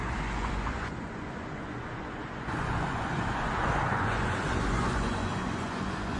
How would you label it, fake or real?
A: fake